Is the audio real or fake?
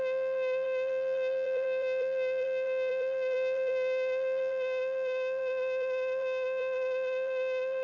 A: fake